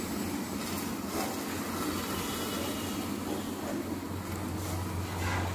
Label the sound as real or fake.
real